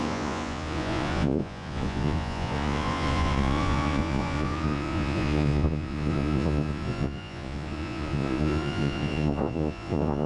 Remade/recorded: remade